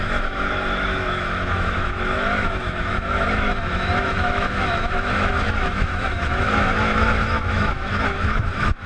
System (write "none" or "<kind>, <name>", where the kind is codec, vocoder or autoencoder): autoencoder, DAC-VAE